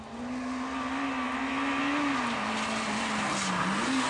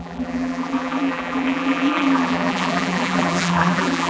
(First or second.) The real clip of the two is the first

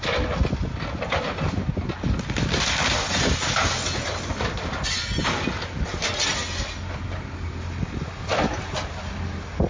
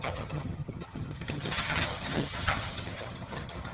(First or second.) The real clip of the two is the first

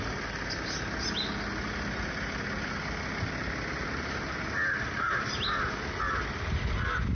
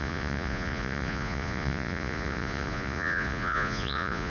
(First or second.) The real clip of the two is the first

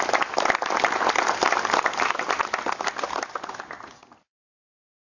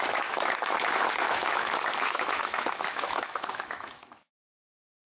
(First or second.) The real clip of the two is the first